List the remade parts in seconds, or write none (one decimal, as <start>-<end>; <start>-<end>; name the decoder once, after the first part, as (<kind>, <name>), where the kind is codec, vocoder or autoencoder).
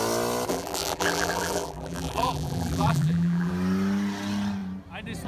0.5-3.5 (vocoder, BigVGAN v2)